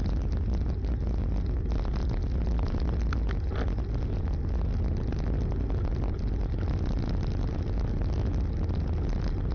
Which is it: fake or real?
real